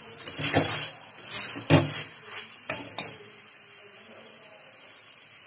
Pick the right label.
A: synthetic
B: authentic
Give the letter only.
B